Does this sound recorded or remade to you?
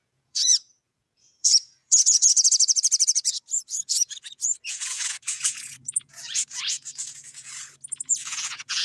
remade